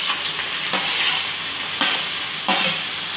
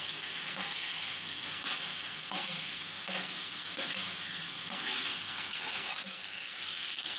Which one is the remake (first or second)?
second